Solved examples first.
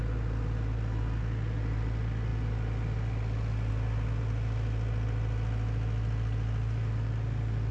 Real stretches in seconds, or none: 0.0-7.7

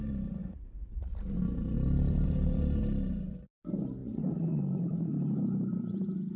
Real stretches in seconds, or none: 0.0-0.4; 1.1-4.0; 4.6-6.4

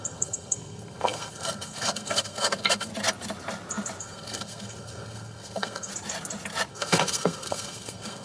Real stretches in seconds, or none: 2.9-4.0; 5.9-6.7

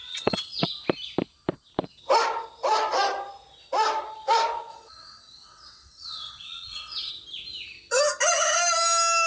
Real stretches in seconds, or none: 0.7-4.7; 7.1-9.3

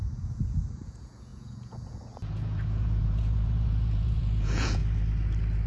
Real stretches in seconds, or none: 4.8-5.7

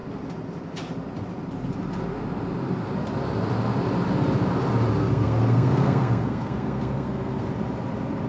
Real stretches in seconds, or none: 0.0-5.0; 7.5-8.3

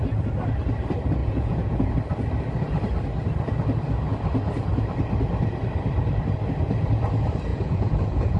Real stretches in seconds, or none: 0.0-1.2; 1.9-7.5

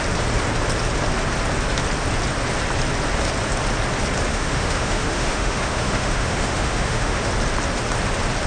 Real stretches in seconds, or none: 0.0-4.3; 7.3-8.5